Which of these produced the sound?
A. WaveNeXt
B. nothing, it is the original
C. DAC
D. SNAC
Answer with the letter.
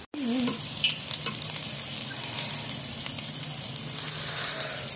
B